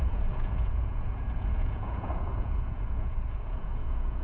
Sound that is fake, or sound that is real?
fake